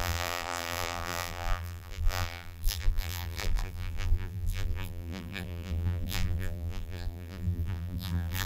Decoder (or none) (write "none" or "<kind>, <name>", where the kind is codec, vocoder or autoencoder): vocoder, BigVGAN v2